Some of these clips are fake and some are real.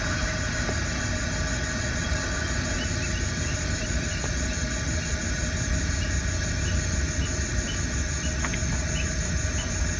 real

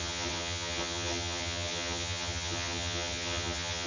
fake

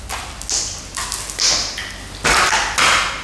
real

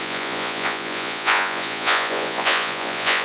fake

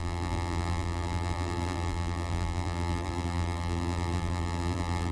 fake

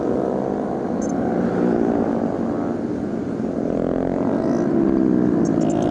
real